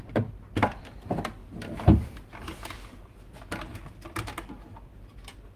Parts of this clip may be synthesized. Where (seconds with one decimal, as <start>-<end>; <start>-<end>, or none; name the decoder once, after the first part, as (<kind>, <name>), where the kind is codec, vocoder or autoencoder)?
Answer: none